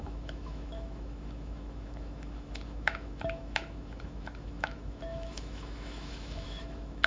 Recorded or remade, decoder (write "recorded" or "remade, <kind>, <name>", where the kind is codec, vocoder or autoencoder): remade, autoencoder, DAC-VAE